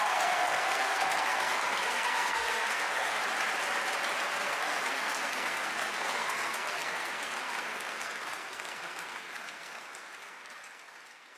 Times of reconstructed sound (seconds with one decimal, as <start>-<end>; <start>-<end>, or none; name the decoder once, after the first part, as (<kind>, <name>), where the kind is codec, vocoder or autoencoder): 0.0-3.2 (codec, SNAC); 4.3-11.4